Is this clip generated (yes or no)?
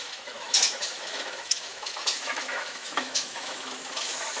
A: yes